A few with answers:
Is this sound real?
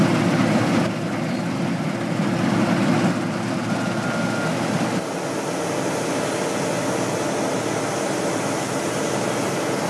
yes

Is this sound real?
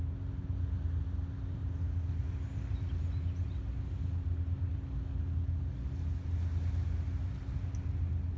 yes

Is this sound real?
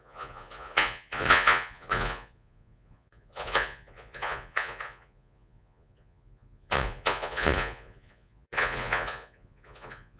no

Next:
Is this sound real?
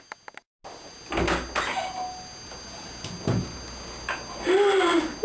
yes